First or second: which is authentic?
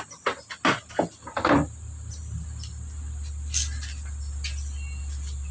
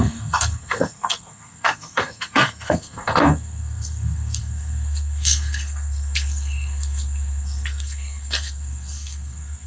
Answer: first